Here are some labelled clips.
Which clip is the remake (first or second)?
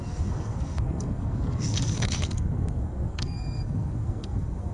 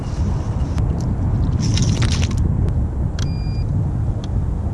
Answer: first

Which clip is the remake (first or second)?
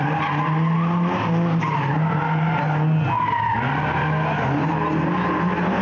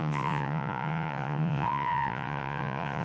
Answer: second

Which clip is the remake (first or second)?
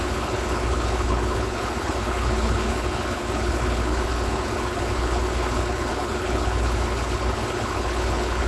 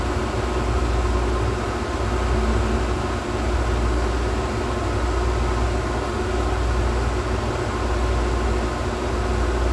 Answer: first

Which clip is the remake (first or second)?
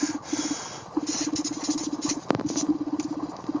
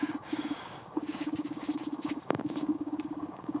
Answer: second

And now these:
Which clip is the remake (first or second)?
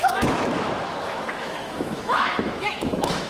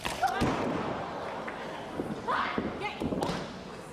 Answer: first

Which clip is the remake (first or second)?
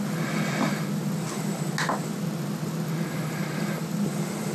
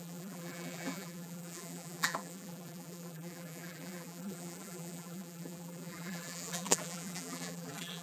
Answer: second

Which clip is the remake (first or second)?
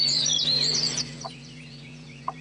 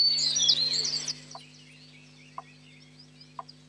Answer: first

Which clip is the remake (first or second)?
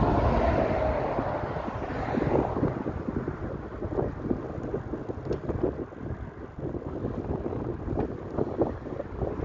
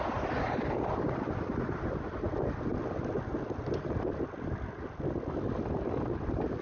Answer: second